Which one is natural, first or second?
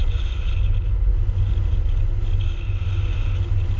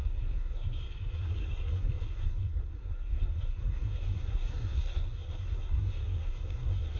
first